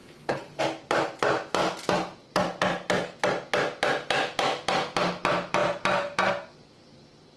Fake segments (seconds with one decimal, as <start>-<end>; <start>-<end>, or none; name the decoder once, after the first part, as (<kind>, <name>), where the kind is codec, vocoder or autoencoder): 0.0-0.6 (codec, HILCodec)